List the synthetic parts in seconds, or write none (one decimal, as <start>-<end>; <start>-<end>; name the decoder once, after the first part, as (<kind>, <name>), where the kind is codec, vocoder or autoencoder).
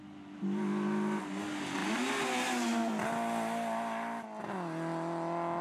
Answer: none